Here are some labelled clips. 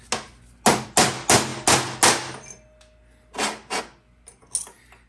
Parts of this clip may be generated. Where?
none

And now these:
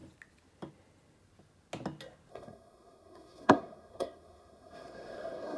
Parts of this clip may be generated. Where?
2.3-5.6 (codec, SNAC)